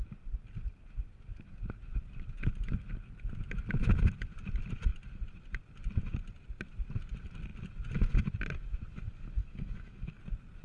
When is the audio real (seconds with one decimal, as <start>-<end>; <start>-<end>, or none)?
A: 0.0-9.4; 10.2-10.6